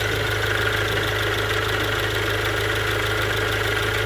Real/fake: real